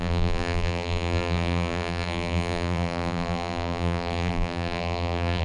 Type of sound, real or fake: fake